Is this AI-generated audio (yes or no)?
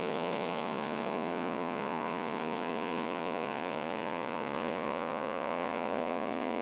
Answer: yes